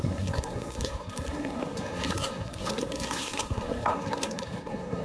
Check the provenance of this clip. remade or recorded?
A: remade